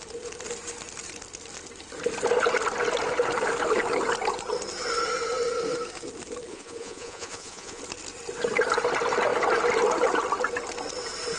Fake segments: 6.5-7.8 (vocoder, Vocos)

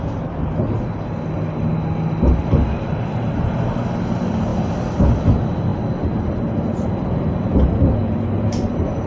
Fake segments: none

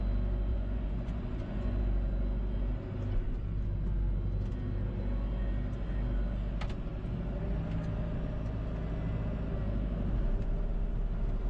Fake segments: 0.5-1.8 (vocoder, Vocos)

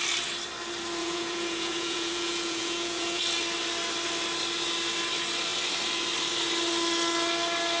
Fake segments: 1.0-3.2 (vocoder, Vocos)